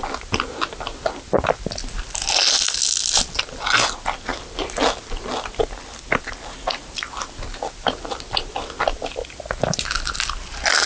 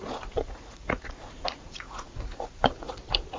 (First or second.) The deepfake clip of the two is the second